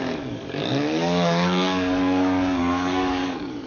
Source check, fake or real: fake